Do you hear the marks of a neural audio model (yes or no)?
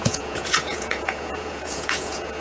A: yes